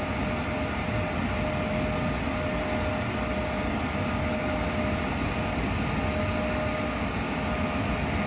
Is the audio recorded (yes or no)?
yes